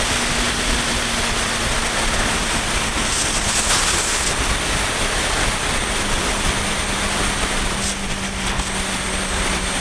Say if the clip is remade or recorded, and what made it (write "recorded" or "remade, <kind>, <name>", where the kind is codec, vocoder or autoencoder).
recorded